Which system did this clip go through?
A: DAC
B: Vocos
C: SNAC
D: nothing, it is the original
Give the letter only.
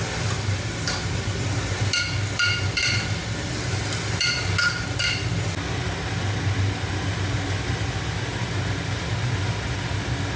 D